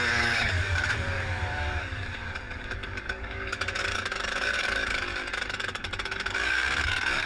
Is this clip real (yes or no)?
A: no